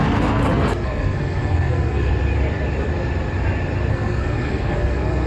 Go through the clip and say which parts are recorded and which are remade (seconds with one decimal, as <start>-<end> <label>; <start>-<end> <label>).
0.0-2.1 remade; 2.1-3.9 recorded; 3.9-5.3 remade